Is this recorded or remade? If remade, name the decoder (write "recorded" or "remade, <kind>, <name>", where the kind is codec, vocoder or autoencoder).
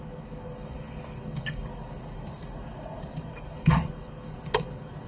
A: remade, codec, DAC